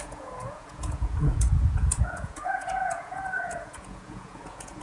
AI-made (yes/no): yes